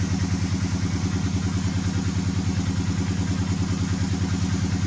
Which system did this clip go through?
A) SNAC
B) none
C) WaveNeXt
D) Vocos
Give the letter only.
B